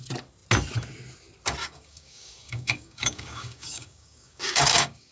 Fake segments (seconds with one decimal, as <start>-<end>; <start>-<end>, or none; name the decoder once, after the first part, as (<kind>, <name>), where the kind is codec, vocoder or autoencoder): 1.6-5.1 (codec, DAC)